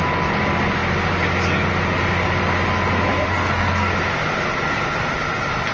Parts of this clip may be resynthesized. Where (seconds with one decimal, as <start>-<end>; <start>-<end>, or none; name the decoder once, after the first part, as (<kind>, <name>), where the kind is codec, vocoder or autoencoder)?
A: 3.3-3.9 (codec, SNAC)